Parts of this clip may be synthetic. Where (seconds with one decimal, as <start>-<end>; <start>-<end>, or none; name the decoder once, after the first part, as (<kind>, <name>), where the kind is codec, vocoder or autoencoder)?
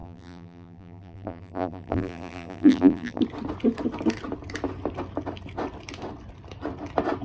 0.0-3.2 (vocoder, BigVGAN v2)